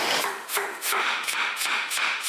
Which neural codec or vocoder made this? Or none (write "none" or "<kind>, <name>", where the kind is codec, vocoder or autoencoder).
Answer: autoencoder, DAC-VAE